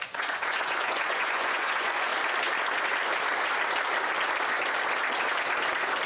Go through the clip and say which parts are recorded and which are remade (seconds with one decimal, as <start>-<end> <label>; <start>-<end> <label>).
0.0-2.1 remade; 2.1-6.1 recorded